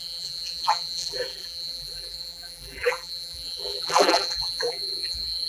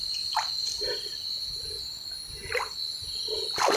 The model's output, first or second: first